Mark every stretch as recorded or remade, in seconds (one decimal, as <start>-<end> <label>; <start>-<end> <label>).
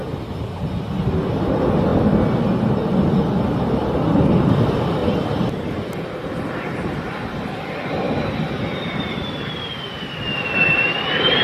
0.0-5.0 recorded; 5.0-9.7 remade; 9.7-11.4 recorded